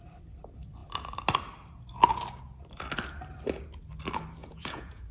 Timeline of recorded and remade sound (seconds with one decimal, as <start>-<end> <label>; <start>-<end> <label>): 0.0-4.4 recorded; 4.4-5.1 remade